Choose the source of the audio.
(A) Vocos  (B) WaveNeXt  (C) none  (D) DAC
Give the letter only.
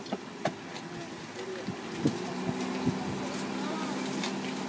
C